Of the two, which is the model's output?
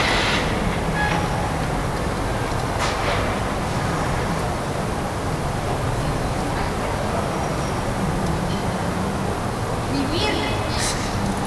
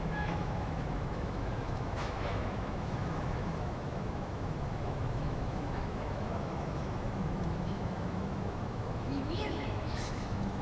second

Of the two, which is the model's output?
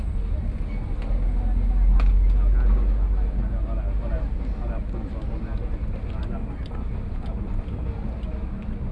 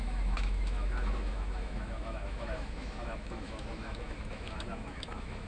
second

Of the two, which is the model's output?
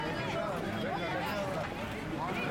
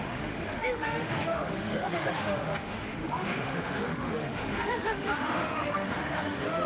second